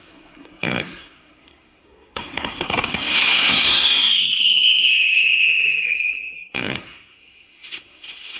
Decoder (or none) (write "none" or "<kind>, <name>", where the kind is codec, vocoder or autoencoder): codec, SNAC